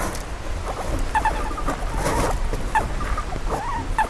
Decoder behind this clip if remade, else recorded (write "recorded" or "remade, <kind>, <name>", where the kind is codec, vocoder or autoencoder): recorded